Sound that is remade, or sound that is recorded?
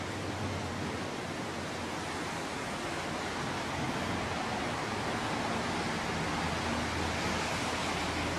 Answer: recorded